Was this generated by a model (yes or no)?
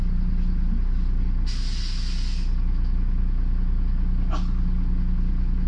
no